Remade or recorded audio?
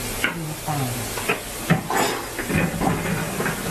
recorded